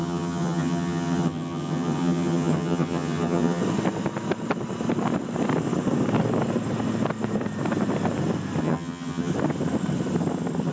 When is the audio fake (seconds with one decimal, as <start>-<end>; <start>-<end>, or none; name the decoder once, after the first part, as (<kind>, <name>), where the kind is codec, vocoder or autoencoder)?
0.0-3.6 (vocoder, HiFi-GAN); 8.6-9.3